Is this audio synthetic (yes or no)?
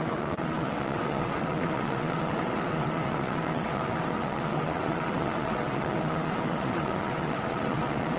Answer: yes